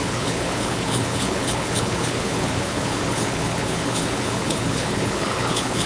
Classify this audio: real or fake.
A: fake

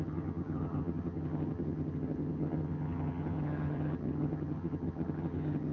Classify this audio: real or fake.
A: fake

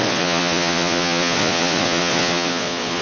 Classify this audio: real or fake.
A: fake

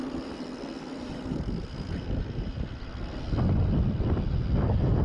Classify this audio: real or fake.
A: real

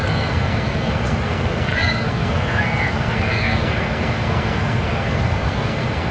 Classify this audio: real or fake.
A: fake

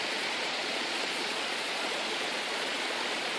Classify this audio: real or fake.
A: fake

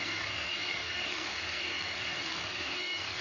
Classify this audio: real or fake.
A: fake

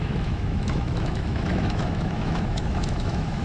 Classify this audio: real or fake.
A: fake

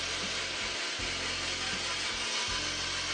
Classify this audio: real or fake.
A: real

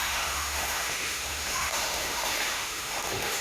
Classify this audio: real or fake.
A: fake